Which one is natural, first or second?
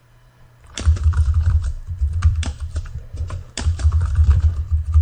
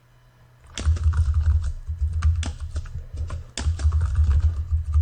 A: second